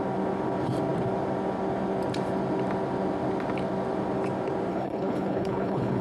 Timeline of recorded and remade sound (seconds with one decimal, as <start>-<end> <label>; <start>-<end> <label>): 0.0-4.7 recorded; 4.7-6.0 remade